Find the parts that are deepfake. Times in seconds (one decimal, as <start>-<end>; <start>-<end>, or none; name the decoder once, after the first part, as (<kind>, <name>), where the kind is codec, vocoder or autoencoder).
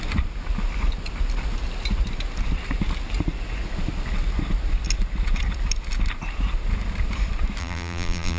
7.6-8.4 (vocoder, BigVGAN v2)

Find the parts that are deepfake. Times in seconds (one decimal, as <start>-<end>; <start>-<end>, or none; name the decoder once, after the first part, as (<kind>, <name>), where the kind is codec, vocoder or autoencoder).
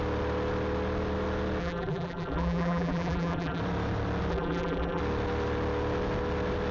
1.6-3.6 (vocoder, BigVGAN v2); 4.3-5.0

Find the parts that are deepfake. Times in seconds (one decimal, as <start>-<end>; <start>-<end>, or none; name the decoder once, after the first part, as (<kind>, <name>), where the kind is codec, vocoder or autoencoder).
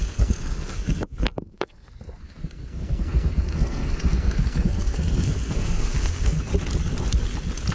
0.0-6.5 (codec, SNAC)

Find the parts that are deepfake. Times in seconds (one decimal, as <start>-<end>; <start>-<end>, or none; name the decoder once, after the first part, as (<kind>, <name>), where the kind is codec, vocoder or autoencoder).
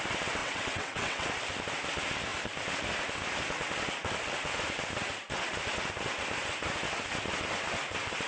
0.4-1.3 (vocoder, WaveNeXt)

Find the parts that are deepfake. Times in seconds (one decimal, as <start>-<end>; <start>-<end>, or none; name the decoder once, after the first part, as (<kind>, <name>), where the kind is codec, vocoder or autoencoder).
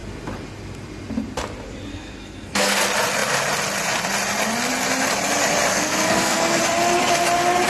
1.9-2.8 (codec, SNAC); 5.7-6.6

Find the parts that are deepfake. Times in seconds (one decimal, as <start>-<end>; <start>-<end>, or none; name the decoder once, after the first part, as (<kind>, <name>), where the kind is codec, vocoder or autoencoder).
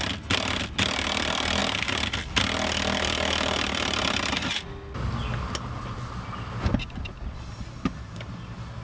none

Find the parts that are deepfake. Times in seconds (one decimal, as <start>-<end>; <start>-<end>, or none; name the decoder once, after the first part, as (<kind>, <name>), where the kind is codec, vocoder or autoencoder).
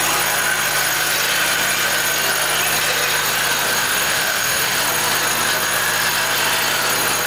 3.8-4.8 (autoencoder, DAC-VAE)